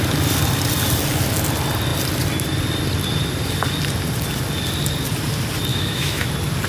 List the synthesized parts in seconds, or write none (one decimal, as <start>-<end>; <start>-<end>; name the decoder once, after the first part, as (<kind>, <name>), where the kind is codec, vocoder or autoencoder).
5.7-6.3 (autoencoder, DAC-VAE)